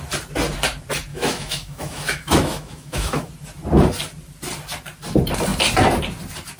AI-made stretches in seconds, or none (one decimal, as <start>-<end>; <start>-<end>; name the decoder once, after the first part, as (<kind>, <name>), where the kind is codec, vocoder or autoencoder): 1.1-3.3 (autoencoder, DAC-VAE)